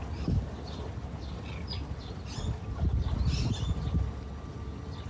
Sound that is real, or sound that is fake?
real